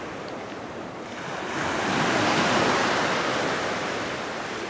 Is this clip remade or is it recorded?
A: recorded